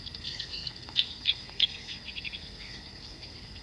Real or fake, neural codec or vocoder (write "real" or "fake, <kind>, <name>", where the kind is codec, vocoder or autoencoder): fake, codec, SNAC